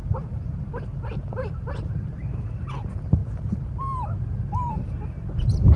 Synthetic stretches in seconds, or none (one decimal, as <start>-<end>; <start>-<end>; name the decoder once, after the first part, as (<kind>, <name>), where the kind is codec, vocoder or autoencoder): none